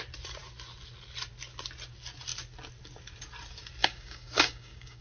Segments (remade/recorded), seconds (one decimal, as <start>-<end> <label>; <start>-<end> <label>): 0.0-3.8 recorded; 3.8-5.0 remade